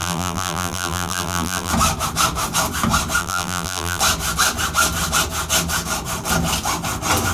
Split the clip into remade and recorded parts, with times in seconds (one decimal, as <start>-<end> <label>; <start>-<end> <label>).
0.0-1.7 remade; 1.7-3.2 recorded; 3.2-4.0 remade; 4.0-7.3 recorded